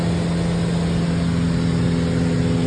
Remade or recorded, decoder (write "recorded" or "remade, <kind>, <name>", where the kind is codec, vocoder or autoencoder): recorded